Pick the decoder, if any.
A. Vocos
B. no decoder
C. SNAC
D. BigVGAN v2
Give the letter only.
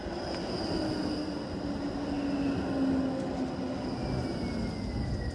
B